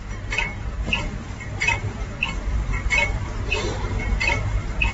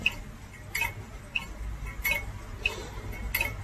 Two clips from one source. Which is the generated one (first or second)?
first